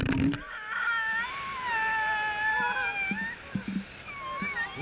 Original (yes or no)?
yes